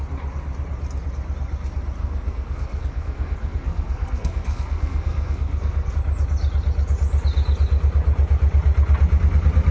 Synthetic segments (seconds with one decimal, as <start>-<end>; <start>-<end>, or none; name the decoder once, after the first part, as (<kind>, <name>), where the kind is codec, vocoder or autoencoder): 2.0-5.9 (codec, SNAC)